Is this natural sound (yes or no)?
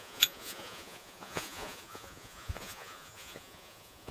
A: no